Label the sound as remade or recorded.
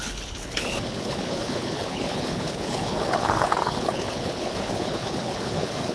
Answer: remade